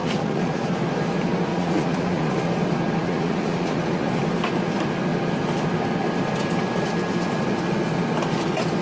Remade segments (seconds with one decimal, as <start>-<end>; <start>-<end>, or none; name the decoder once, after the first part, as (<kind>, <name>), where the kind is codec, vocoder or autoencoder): 0.0-0.6 (vocoder, Vocos); 1.5-2.5; 3.0-4.2